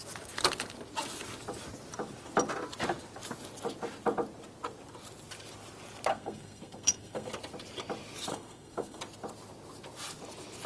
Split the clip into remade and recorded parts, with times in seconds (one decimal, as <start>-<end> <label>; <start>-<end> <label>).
0.0-6.1 recorded; 6.1-7.3 remade; 7.3-8.3 recorded; 8.3-9.0 remade; 9.0-10.7 recorded